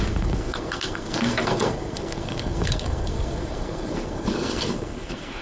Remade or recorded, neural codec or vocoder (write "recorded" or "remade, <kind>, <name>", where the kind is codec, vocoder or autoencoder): remade, codec, SNAC